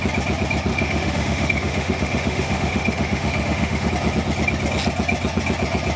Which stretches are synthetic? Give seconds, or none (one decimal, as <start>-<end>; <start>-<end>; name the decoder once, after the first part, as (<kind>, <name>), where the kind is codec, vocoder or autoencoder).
0.7-3.9 (autoencoder, DAC-VAE)